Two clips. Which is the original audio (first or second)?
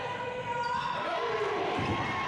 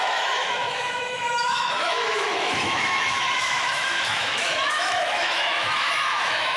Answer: first